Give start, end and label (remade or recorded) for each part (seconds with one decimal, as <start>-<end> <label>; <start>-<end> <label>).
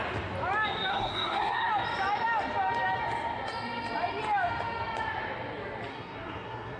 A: 0.0-0.9 recorded; 0.9-1.7 remade; 1.7-5.9 recorded; 5.9-6.8 remade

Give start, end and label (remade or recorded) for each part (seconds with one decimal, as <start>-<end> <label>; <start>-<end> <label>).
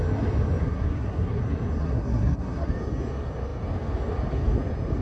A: 0.0-0.6 recorded; 0.6-1.4 remade; 1.4-1.8 recorded; 1.8-2.7 remade; 2.7-5.0 recorded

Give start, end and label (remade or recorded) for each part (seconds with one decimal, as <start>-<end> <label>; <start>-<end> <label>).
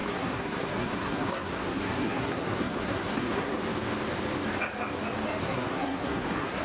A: 0.0-3.5 remade; 3.5-5.4 recorded; 5.4-6.6 remade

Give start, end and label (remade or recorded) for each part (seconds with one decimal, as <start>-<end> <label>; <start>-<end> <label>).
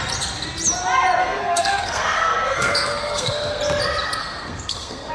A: 0.0-1.2 recorded; 1.2-3.6 remade; 3.6-4.2 recorded; 4.2-5.1 remade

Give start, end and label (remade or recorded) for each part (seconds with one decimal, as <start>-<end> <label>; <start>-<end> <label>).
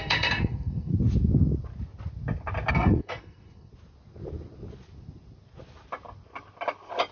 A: 0.0-0.9 remade; 0.9-2.7 recorded; 2.7-3.7 remade; 3.7-7.1 recorded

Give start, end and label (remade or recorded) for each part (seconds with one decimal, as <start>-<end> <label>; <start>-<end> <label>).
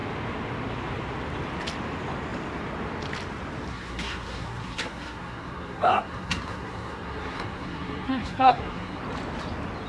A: 0.0-3.7 recorded; 3.7-9.0 remade; 9.0-9.9 recorded